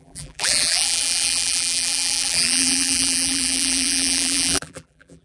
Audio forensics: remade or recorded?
remade